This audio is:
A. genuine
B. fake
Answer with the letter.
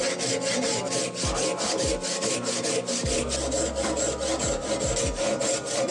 A